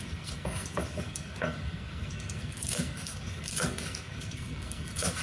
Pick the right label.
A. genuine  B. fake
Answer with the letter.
B